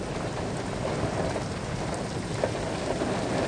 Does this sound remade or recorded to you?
recorded